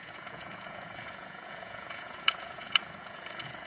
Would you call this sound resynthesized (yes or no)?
yes